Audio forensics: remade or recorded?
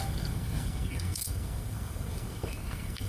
remade